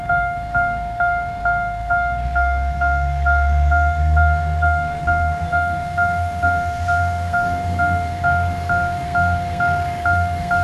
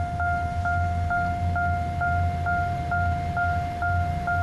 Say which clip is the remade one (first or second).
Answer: first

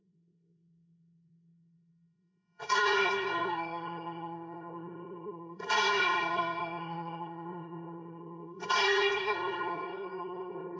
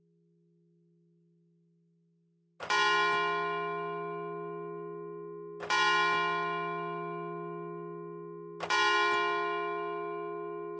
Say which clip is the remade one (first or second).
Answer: first